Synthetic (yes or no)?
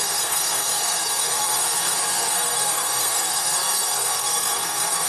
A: yes